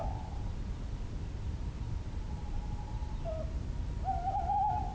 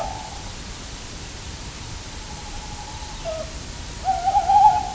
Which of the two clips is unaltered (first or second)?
first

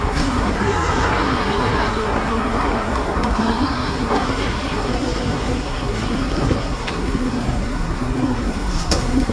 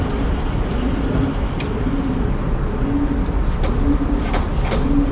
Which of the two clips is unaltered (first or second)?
second